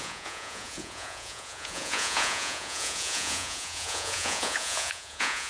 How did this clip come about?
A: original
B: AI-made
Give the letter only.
B